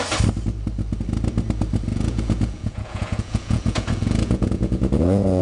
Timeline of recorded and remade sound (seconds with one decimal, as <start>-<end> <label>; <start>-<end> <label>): 0.0-1.9 recorded; 1.9-5.4 remade